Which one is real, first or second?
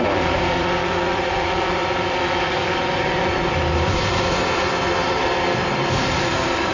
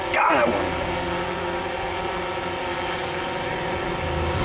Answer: second